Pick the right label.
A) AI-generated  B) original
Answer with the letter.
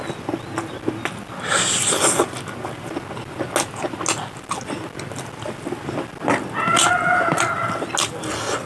B